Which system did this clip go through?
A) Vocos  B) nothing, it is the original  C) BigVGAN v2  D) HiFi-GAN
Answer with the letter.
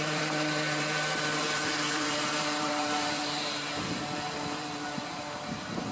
C